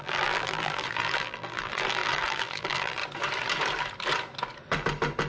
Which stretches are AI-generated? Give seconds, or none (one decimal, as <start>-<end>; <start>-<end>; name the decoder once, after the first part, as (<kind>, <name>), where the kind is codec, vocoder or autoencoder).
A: 0.0-3.0 (vocoder, BigVGAN v2)